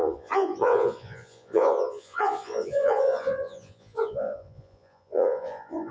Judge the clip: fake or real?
fake